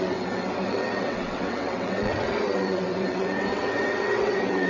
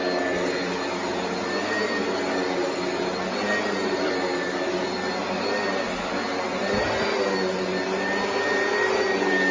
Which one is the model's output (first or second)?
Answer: first